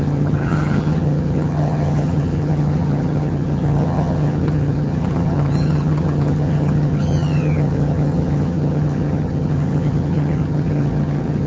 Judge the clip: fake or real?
fake